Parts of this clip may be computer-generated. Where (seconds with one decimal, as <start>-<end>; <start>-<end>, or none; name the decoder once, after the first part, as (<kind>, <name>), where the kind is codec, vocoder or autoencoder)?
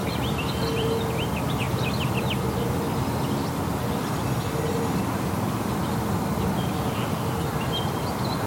0.5-8.5 (vocoder, BigVGAN v2)